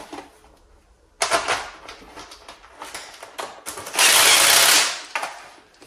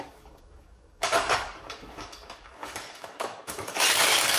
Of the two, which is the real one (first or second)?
first